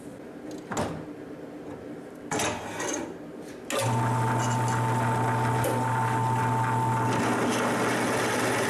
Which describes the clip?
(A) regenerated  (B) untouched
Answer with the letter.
B